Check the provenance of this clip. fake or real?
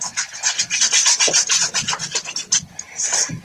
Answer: real